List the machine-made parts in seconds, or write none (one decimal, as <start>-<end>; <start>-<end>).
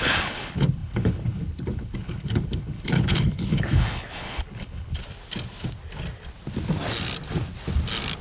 0.0-5.0